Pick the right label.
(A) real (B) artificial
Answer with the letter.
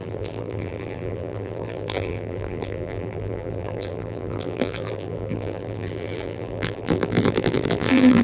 B